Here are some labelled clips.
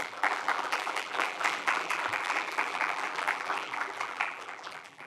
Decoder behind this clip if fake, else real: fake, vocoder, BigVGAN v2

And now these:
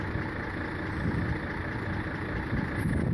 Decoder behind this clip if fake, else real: fake, vocoder, BigVGAN v2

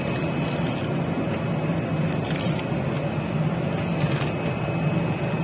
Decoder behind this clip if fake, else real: real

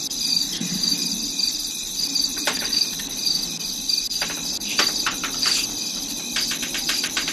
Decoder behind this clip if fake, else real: fake, vocoder, BigVGAN v2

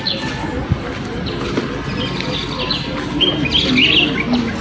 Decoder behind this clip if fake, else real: real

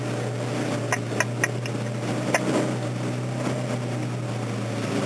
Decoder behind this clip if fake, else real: real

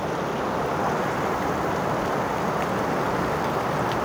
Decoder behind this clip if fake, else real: real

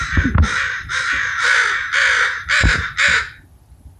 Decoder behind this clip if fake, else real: fake, vocoder, BigVGAN v2